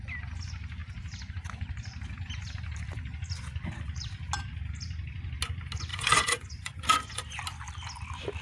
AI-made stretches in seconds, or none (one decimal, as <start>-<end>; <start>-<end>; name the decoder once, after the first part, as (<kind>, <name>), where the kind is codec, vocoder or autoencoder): 5.9-7.2 (vocoder, Vocos)